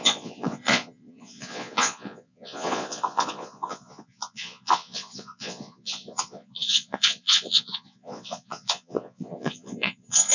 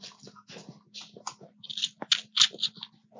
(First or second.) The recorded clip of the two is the second